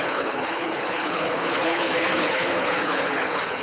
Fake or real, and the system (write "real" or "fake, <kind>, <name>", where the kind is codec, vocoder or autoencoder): fake, codec, HILCodec